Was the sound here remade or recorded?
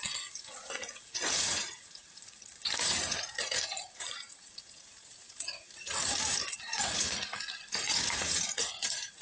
remade